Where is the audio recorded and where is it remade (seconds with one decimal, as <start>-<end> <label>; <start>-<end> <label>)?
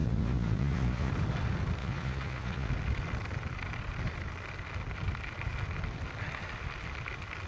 0.0-1.1 remade; 1.1-1.8 recorded; 1.8-2.7 remade; 2.7-7.5 recorded